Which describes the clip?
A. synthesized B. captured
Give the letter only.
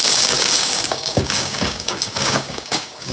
A